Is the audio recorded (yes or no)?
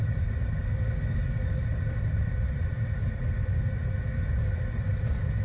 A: yes